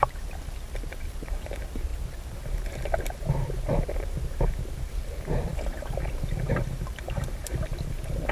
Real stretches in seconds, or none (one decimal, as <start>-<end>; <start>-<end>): 0.0-8.3